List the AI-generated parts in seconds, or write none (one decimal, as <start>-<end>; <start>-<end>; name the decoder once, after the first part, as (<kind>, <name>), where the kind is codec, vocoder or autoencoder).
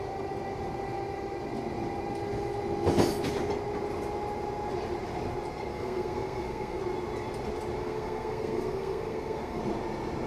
5.7-6.8 (codec, SNAC); 7.8-9.6